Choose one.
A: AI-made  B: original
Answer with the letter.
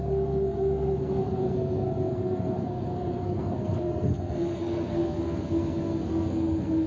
A